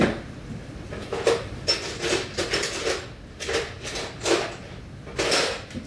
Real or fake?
real